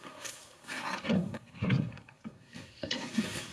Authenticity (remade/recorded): remade